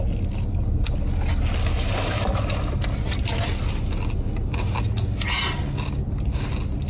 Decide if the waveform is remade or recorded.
recorded